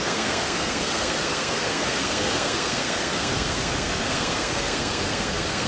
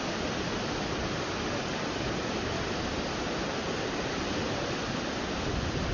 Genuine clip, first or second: second